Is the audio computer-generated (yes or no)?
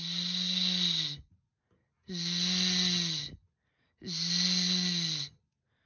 no